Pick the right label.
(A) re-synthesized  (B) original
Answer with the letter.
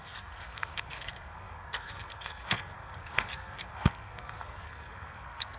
A